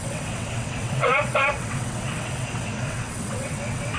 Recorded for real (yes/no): no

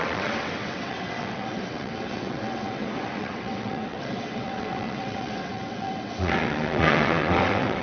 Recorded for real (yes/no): no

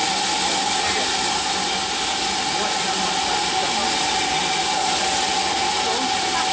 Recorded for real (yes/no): yes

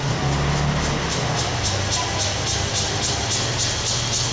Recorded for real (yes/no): yes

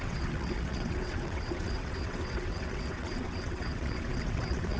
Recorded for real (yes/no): no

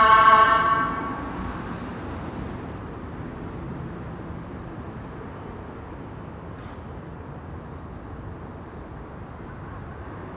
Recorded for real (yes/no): yes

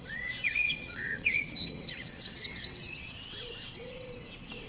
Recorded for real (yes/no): no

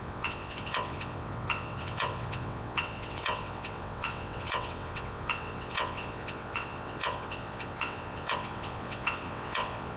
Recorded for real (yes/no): no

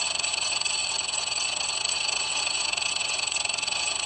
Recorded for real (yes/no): no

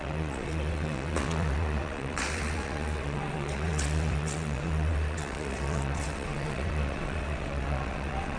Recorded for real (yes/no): no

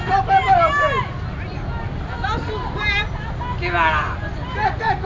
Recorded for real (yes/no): yes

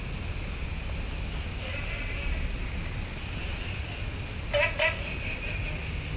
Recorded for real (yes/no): yes